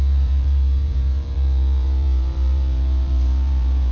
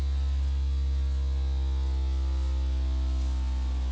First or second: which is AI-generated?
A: first